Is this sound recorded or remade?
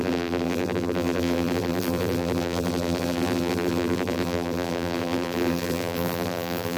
remade